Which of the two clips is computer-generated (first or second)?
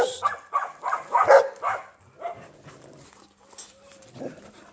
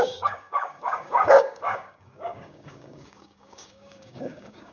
second